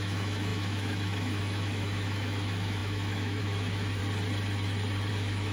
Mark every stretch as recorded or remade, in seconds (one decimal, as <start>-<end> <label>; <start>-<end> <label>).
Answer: 0.0-4.0 remade; 4.0-5.1 recorded; 5.1-5.5 remade